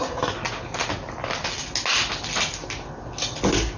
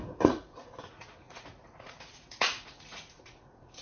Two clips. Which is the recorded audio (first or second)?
first